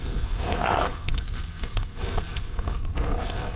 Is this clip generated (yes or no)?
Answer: yes